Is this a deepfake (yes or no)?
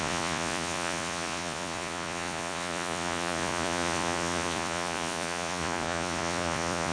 yes